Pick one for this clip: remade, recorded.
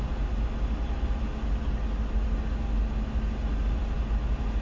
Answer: recorded